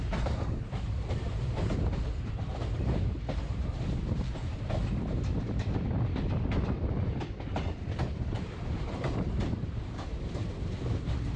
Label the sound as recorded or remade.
remade